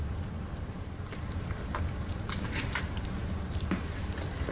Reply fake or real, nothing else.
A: fake